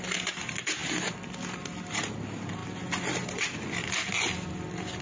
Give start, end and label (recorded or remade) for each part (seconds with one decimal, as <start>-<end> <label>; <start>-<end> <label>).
0.0-5.0 recorded